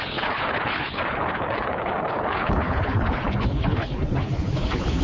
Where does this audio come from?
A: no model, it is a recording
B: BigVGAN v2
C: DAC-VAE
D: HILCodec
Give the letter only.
D